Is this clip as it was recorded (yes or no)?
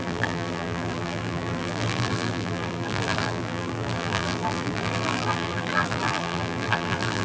no